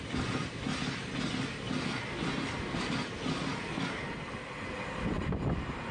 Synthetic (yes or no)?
no